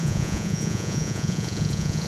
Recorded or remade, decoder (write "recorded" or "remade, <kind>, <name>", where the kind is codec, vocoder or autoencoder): remade, vocoder, Vocos